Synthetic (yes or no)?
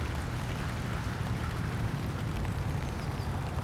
yes